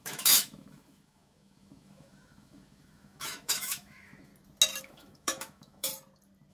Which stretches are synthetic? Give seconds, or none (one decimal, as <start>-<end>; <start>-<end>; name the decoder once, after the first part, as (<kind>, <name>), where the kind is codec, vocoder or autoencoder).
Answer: 0.0-4.3 (autoencoder, DAC-VAE); 4.8-5.9